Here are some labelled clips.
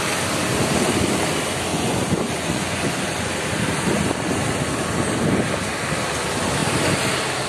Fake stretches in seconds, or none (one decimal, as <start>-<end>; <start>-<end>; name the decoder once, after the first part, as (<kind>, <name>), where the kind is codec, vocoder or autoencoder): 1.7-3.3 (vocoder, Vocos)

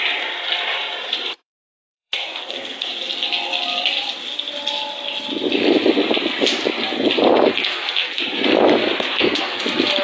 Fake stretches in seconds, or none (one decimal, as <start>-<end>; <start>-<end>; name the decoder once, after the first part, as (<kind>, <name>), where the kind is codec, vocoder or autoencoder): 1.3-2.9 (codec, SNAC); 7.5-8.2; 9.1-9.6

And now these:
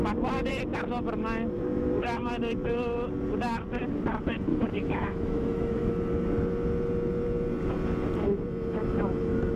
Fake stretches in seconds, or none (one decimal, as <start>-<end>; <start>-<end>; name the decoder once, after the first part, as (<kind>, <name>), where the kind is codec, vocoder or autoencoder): 4.5-5.9 (autoencoder, DAC-VAE)

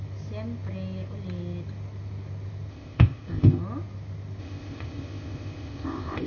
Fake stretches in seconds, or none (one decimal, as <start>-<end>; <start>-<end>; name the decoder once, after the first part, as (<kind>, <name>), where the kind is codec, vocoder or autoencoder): 2.7-3.6 (codec, ZipCodec); 4.4-6.3

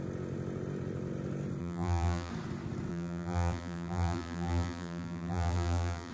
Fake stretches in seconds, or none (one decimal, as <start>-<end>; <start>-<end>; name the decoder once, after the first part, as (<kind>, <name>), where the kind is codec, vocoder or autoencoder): 1.6-2.3 (vocoder, BigVGAN v2); 2.9-6.1